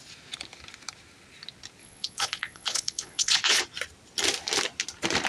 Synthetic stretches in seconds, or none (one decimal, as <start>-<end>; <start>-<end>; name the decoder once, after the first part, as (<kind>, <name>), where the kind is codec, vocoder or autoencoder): 1.8-3.6 (vocoder, Vocos)